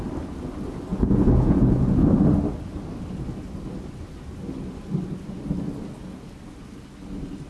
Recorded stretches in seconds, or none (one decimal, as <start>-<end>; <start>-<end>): 0.0-0.9; 2.1-7.5

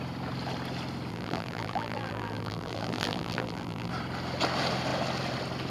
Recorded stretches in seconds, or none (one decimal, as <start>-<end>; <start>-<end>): 0.0-1.1; 3.9-5.7

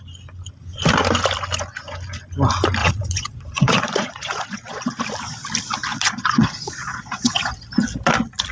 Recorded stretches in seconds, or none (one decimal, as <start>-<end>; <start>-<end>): 0.0-2.8; 5.0-5.9; 7.5-8.5

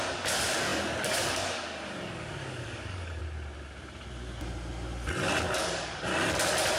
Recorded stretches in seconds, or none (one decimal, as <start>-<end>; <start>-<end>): 3.2-5.5; 6.1-6.8

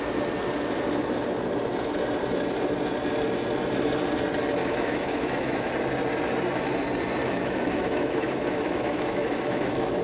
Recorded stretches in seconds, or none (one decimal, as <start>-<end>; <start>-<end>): 0.0-4.6; 5.7-7.2

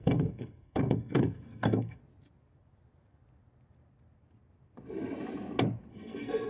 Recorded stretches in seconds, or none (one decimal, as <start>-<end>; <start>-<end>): 2.0-5.9

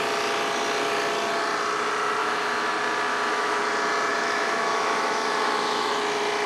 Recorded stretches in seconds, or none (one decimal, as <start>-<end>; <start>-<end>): 0.0-2.2; 2.7-3.1; 3.6-4.1; 6.0-6.5

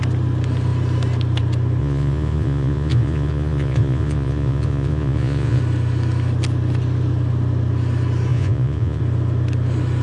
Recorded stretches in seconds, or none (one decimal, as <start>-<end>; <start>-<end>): 0.0-1.8; 5.6-8.3; 9.0-10.0